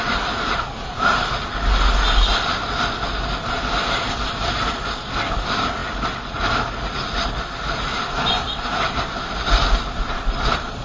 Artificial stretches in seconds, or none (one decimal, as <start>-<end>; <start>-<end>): none